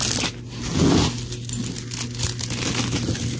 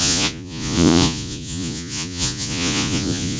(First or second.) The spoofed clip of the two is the second